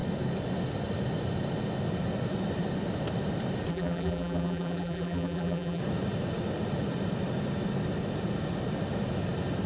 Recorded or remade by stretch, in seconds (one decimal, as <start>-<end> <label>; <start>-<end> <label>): 0.0-3.7 recorded; 3.7-5.8 remade; 5.8-9.7 recorded